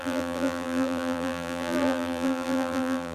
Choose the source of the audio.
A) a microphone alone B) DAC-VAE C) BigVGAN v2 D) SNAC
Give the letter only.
C